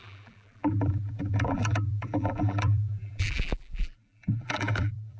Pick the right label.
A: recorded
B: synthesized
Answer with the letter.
B